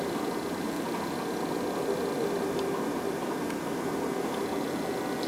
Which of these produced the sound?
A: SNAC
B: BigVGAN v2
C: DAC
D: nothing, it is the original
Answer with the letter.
D